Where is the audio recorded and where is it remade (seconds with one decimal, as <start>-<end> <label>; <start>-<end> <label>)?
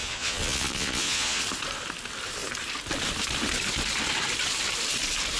0.0-1.4 remade; 1.4-5.4 recorded